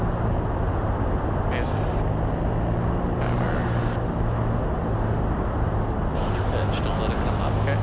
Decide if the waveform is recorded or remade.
recorded